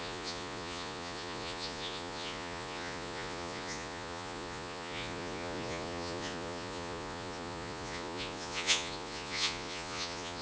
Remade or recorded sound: remade